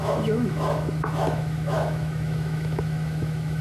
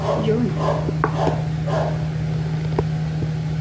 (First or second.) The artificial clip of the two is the first